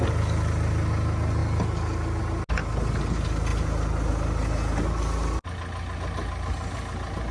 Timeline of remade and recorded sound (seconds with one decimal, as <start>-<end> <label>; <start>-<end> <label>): 0.0-7.3 recorded